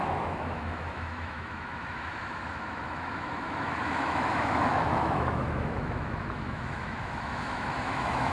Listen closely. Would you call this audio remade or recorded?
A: remade